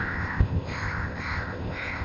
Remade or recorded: remade